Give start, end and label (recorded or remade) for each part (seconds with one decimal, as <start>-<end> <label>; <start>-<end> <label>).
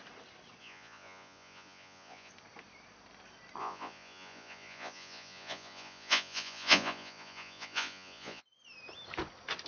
0.0-0.6 recorded; 0.6-2.3 remade; 2.3-3.6 recorded; 3.6-8.4 remade; 8.4-9.7 recorded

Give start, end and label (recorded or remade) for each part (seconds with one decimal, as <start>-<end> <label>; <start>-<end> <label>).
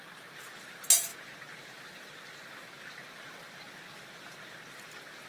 0.0-5.3 recorded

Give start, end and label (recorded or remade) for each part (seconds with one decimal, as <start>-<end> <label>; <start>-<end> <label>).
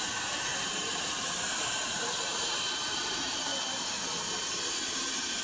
0.0-3.5 remade; 3.5-4.5 recorded; 4.5-5.4 remade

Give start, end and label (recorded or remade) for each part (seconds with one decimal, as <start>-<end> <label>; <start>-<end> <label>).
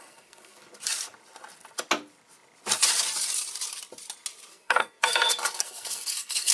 0.0-0.6 remade; 0.6-4.5 recorded; 4.5-6.5 remade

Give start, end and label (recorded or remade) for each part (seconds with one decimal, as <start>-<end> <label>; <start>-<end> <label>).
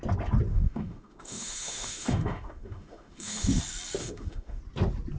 0.0-0.5 recorded; 0.5-3.6 remade; 3.6-4.0 recorded; 4.0-4.6 remade; 4.6-5.2 recorded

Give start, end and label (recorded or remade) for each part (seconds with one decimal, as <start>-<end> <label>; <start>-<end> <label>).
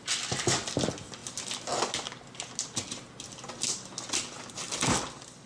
0.0-5.5 recorded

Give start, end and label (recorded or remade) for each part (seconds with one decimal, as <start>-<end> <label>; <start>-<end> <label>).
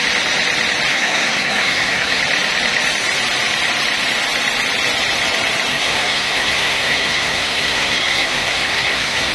0.0-0.9 recorded; 0.9-2.2 remade; 2.2-5.7 recorded; 5.7-9.3 remade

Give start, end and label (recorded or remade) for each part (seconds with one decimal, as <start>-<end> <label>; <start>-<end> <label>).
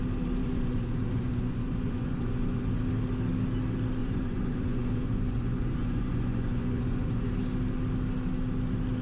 0.0-0.4 recorded; 0.4-2.8 remade; 2.8-4.0 recorded; 4.0-7.3 remade; 7.3-9.0 recorded